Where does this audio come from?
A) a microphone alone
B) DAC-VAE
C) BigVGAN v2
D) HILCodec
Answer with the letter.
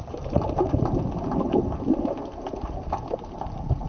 A